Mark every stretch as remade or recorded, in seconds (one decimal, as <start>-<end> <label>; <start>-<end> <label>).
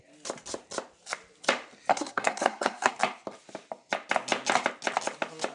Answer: 0.0-1.9 recorded; 1.9-2.9 remade; 2.9-5.5 recorded